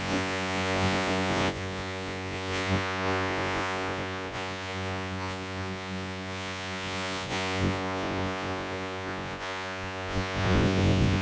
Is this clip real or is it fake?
fake